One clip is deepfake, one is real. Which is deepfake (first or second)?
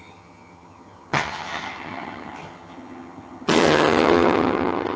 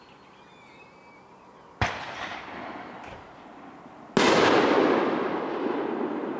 first